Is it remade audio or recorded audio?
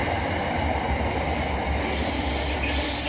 recorded